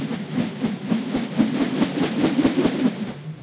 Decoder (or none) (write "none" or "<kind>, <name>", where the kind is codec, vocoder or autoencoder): none